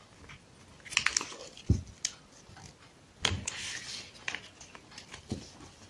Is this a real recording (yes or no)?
yes